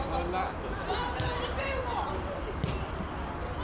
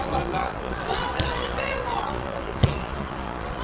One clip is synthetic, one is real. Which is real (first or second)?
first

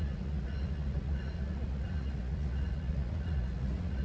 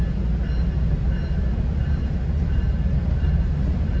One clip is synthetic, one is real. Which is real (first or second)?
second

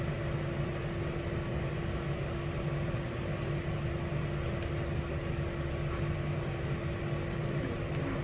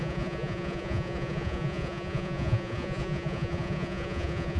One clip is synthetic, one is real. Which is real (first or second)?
first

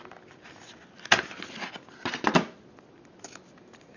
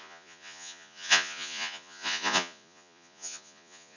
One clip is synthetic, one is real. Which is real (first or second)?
first